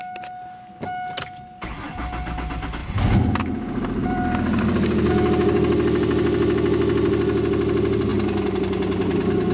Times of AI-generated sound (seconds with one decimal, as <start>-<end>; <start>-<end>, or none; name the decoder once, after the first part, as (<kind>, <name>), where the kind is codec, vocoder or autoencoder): 2.8-5.1 (vocoder, BigVGAN v2)